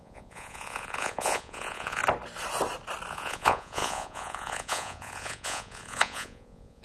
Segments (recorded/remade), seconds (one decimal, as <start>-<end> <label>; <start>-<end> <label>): 0.0-2.0 remade; 2.0-3.1 recorded; 3.1-6.8 remade

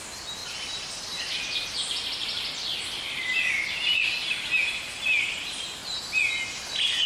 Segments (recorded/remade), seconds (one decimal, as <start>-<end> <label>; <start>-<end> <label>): 0.0-0.4 remade; 0.4-4.7 recorded; 4.7-5.8 remade; 5.8-6.5 recorded; 6.5-7.1 remade

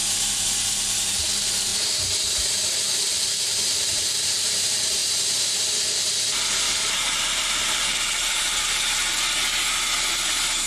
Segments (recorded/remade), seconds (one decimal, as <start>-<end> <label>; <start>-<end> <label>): 0.0-5.0 remade; 5.0-6.8 recorded; 6.8-9.1 remade; 9.1-10.1 recorded; 10.1-10.7 remade